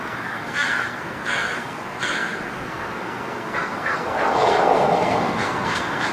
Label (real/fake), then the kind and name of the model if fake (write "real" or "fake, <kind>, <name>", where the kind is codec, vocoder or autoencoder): fake, codec, SNAC